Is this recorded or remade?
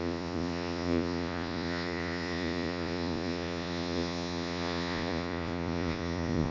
remade